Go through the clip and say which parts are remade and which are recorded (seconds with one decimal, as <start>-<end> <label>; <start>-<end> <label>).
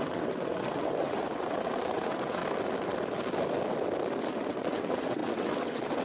0.0-2.4 remade; 2.4-4.3 recorded; 4.3-6.0 remade